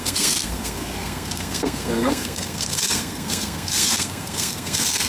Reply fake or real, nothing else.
fake